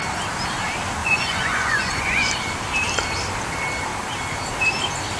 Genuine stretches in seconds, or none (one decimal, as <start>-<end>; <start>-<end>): 0.0-1.0; 2.3-5.2